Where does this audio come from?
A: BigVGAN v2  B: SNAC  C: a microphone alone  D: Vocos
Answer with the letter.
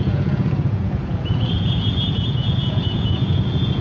D